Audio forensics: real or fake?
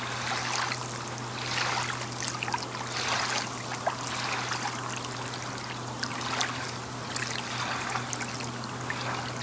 real